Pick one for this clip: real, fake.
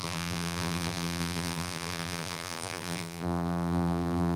fake